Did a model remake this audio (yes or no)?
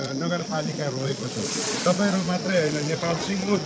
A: yes